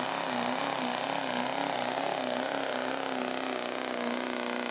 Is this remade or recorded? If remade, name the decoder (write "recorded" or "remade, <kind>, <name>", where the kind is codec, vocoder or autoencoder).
recorded